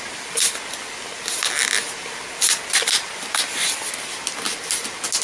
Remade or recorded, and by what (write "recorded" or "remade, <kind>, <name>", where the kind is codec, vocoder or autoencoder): recorded